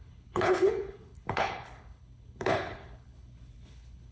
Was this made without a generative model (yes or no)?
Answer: no